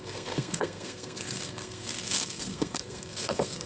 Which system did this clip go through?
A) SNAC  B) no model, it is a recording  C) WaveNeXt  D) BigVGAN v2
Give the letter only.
A